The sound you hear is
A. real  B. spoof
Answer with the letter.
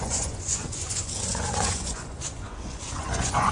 B